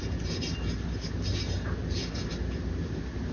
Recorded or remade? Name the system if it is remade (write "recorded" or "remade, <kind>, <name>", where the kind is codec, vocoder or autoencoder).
recorded